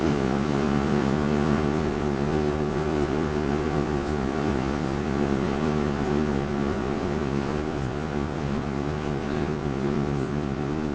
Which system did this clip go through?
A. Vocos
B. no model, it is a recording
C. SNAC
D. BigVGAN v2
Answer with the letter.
A